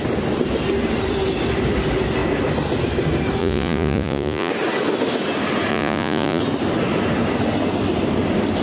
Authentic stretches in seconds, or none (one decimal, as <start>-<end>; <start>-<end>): 0.0-3.4; 4.5-5.7; 6.4-8.6